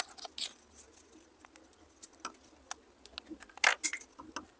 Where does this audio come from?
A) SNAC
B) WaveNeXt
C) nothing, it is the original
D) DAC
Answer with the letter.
C